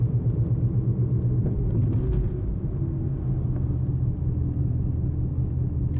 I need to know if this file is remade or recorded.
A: recorded